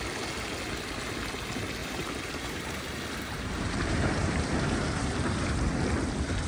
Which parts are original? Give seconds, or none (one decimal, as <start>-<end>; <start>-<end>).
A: 0.0-1.8; 5.7-6.5